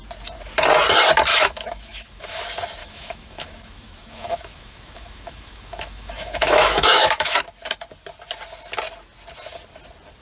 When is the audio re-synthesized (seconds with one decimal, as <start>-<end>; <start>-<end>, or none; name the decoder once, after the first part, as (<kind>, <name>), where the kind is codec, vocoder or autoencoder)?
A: 1.3-2.4 (autoencoder, DAC-VAE); 2.8-7.4